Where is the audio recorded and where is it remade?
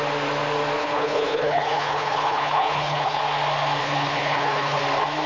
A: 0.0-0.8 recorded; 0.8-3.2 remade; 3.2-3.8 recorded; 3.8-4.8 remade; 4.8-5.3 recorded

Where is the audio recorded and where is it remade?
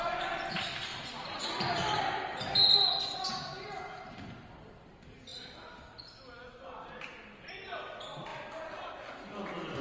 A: 0.0-9.8 recorded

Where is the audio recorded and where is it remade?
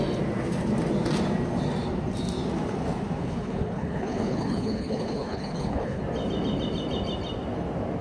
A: 0.0-3.2 recorded; 3.2-6.0 remade; 6.0-8.0 recorded